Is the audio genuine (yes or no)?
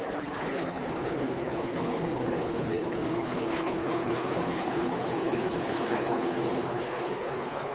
no